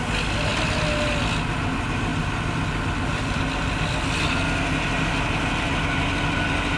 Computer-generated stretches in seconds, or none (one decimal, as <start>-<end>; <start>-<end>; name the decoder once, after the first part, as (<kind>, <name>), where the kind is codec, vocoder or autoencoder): none